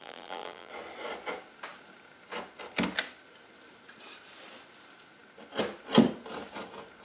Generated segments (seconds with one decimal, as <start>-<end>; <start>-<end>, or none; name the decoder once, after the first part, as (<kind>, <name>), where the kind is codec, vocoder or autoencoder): 0.0-0.7 (vocoder, BigVGAN v2)